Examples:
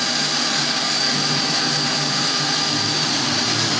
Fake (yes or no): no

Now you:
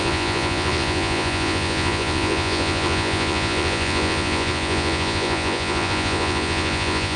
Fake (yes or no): yes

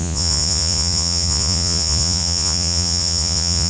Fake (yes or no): yes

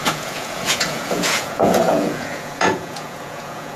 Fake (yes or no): yes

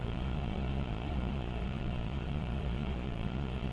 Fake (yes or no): yes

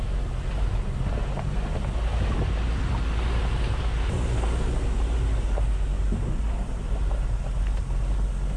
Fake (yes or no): no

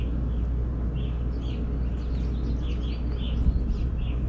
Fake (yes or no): no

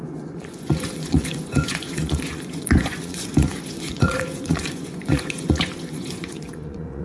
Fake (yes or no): yes